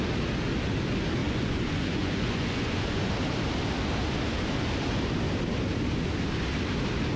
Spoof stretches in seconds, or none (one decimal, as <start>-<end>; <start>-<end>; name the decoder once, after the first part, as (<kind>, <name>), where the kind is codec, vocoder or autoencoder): 1.2-3.1 (vocoder, Vocos)